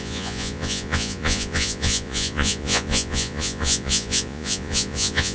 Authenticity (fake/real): fake